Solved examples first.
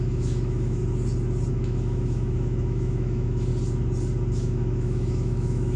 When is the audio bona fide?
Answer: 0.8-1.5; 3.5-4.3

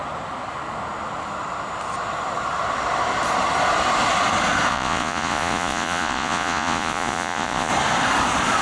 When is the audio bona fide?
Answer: 0.0-4.7; 7.7-8.6

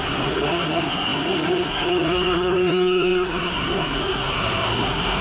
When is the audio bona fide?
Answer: none